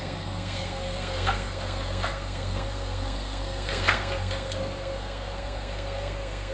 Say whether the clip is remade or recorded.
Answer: remade